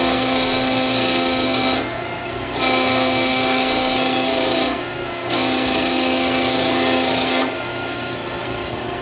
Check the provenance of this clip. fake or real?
fake